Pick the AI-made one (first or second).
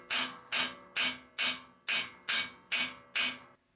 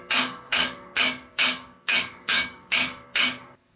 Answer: second